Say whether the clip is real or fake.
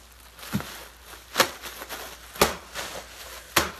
real